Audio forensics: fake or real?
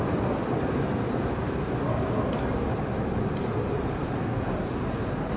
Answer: real